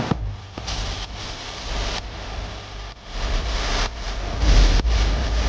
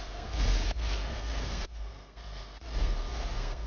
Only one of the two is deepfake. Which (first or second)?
second